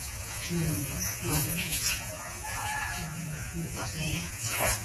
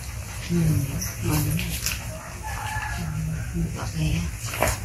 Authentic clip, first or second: second